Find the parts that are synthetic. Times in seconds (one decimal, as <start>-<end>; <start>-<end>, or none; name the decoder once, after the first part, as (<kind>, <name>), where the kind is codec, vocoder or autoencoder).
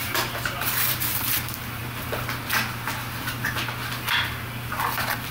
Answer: 0.0-1.8 (vocoder, BigVGAN v2)